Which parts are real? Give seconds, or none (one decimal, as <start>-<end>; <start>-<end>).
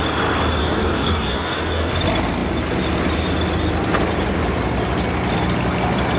0.0-0.6; 1.9-6.2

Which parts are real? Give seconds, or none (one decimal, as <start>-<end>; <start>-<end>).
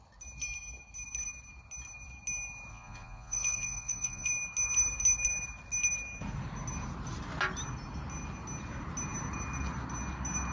0.0-2.7; 4.3-10.5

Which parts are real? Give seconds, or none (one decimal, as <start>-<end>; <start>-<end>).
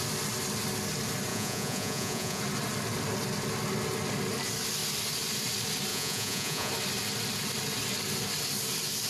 0.0-1.3; 2.4-5.9; 6.7-9.1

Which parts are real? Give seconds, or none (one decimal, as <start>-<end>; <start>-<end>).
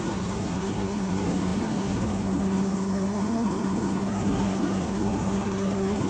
none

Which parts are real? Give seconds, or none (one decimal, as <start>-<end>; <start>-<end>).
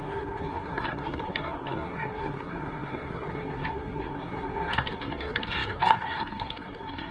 none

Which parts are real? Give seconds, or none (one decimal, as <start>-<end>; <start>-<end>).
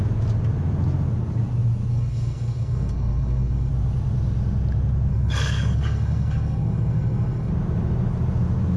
0.0-1.9; 3.7-5.1; 7.5-8.8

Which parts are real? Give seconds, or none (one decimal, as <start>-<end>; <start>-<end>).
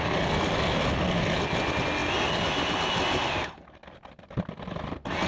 0.0-5.3